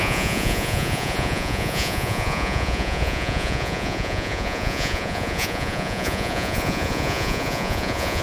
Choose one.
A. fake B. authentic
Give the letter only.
A